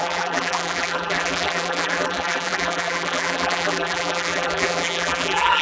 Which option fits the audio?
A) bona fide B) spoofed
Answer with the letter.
B